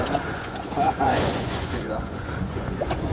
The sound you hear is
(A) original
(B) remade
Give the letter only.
B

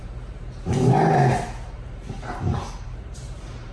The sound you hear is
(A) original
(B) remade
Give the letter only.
B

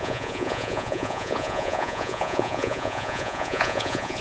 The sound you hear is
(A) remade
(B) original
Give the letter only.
A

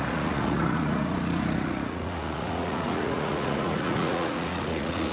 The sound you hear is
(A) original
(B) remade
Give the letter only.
B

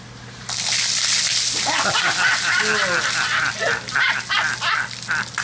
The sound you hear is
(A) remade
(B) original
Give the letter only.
B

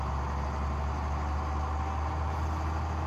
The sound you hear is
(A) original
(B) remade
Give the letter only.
A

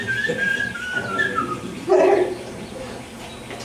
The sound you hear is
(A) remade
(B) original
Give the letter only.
B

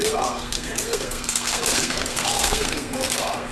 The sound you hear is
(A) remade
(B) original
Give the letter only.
A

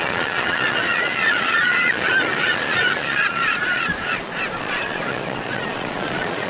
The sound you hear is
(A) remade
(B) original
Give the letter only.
A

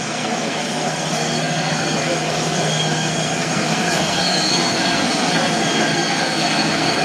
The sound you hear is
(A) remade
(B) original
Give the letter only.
A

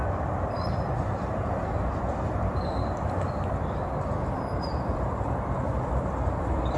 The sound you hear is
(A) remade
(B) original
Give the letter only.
A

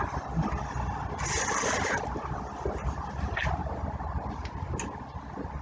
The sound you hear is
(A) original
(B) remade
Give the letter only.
A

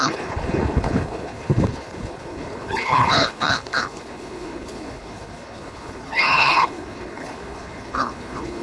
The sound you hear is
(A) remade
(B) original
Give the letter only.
A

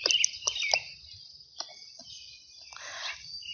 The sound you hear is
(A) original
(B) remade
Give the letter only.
A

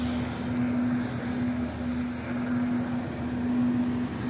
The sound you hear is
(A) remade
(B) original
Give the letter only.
B